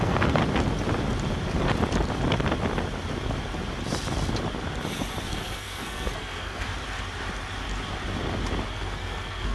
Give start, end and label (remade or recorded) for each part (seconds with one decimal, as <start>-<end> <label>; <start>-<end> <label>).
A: 0.0-0.4 remade; 0.4-5.2 recorded; 5.2-6.7 remade; 6.7-8.7 recorded; 8.7-9.5 remade